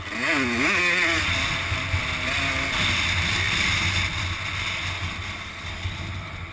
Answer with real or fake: real